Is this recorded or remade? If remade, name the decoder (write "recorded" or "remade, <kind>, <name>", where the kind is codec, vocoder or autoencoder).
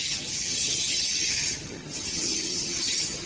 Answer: remade, vocoder, HiFi-GAN